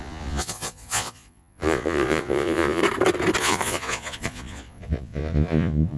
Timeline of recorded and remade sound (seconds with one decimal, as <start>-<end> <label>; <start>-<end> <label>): 0.0-2.8 remade; 2.8-3.4 recorded; 3.4-6.0 remade

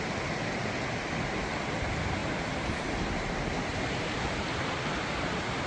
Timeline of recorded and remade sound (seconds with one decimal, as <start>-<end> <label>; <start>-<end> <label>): 0.0-2.2 recorded; 2.2-3.3 remade; 3.3-3.7 recorded; 3.7-4.4 remade; 4.4-5.7 recorded

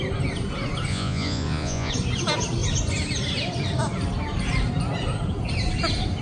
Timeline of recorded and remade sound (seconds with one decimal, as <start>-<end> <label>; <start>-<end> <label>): 0.0-0.9 recorded; 0.9-1.9 remade; 1.9-6.2 recorded